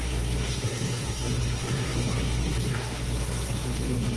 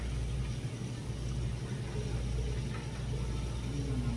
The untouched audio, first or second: second